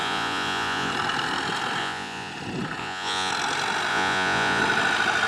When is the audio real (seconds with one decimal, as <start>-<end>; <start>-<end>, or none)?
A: 0.9-1.8; 2.3-2.8; 3.3-3.9; 4.6-5.3